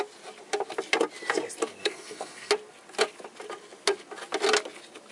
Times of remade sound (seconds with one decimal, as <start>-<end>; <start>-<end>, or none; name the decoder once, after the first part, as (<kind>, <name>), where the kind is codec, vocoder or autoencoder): 1.8-2.5 (codec, SNAC)